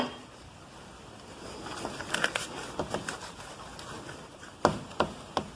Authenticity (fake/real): real